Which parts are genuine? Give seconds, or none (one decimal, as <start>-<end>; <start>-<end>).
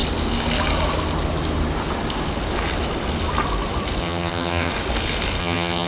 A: 0.0-4.0; 4.7-5.4